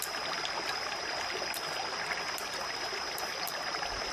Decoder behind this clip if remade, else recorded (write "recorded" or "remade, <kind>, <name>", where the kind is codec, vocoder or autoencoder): recorded